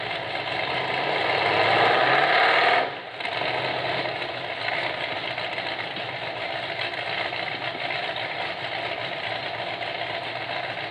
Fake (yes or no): no